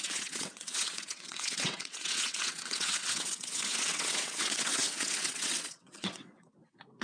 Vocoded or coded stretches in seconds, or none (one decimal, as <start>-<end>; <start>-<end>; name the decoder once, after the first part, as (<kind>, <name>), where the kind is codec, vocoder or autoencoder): 0.0-7.0 (vocoder, WaveNeXt)